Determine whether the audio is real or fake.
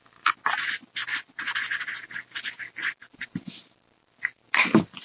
real